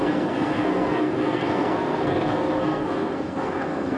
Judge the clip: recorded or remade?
remade